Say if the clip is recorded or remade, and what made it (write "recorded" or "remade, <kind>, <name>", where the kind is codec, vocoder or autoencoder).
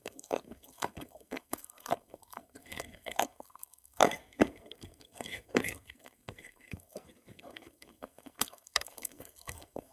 remade, codec, SNAC